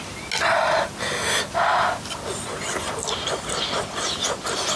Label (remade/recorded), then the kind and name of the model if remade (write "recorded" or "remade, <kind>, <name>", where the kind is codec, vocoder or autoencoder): recorded